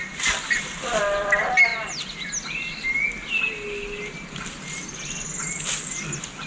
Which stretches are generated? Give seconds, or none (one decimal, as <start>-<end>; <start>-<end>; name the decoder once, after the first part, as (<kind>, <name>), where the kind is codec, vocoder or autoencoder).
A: none